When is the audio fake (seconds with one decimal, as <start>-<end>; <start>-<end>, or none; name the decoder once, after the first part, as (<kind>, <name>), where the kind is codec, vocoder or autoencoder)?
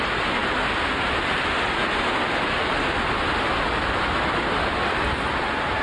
none